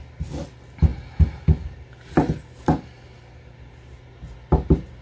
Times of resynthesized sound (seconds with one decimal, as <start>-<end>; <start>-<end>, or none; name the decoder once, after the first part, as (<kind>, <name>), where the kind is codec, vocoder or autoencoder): none